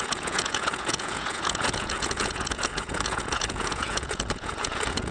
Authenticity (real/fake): fake